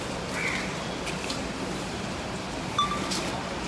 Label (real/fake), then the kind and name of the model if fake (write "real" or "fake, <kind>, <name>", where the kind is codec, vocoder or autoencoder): fake, vocoder, BigVGAN v2